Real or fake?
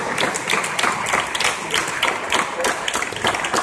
real